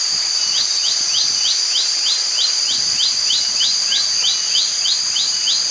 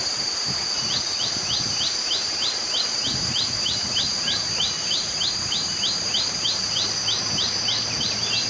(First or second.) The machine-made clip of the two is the second